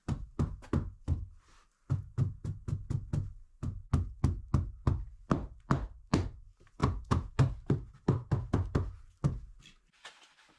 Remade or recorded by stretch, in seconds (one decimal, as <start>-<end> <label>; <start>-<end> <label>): 0.0-6.8 recorded; 6.8-7.3 remade; 7.3-10.6 recorded